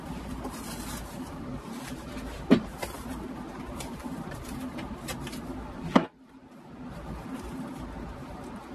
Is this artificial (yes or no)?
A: yes